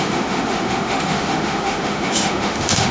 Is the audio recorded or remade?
remade